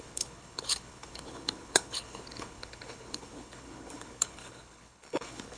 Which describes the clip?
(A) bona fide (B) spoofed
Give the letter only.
B